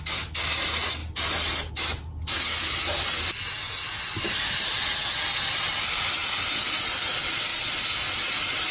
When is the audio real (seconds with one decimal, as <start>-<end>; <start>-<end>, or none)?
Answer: 0.0-8.7